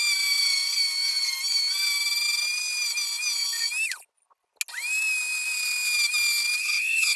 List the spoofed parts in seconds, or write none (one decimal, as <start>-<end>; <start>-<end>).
6.6-7.2